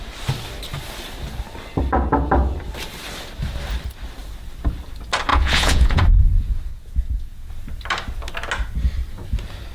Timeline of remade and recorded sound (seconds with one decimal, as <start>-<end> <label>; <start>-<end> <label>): 0.0-5.3 recorded; 5.3-6.0 remade; 6.0-6.7 recorded; 6.7-7.5 remade; 7.5-9.7 recorded